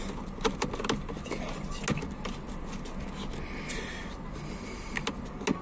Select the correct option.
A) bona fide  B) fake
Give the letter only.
A